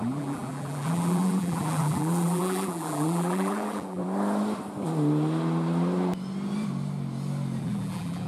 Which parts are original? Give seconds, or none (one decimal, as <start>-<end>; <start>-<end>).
4.0-7.6